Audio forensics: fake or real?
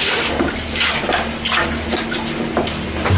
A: real